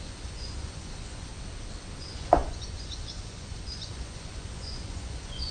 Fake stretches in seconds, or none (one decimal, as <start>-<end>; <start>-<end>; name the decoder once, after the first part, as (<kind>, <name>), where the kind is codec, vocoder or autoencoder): 0.0-1.3 (vocoder, Vocos); 1.9-5.5